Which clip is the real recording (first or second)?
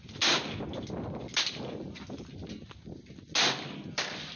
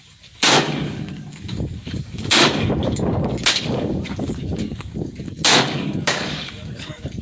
first